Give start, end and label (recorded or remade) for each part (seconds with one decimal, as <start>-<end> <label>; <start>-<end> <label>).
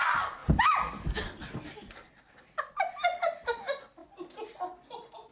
0.0-5.3 recorded